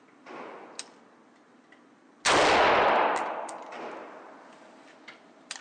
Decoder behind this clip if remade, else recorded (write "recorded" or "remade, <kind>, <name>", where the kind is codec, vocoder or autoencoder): recorded